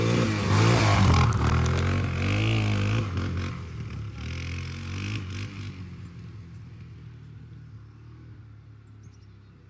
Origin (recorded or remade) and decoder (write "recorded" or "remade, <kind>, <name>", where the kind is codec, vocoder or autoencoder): recorded